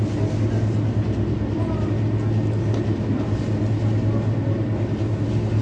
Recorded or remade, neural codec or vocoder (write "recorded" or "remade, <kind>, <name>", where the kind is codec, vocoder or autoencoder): recorded